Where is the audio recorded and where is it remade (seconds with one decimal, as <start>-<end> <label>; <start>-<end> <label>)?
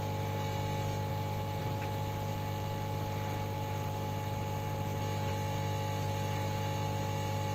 0.0-7.5 remade